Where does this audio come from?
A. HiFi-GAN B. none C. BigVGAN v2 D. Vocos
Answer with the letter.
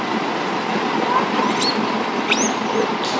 B